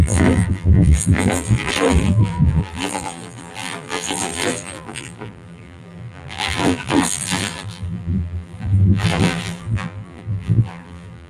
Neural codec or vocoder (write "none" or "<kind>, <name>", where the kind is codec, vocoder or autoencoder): vocoder, BigVGAN v2